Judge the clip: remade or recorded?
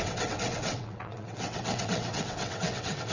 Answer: remade